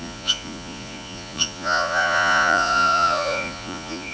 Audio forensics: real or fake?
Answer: fake